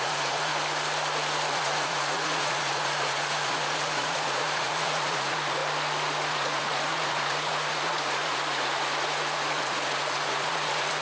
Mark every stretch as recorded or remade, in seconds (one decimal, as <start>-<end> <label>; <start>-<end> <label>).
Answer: 0.0-0.5 remade; 0.5-1.5 recorded; 1.5-5.6 remade; 5.6-6.3 recorded; 6.3-11.0 remade